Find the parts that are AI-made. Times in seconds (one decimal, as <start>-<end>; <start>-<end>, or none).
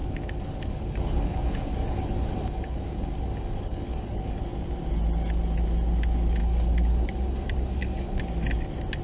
0.0-4.4; 6.4-8.2